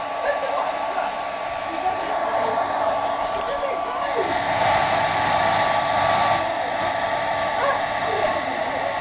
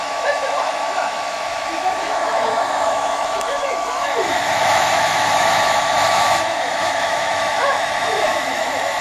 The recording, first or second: first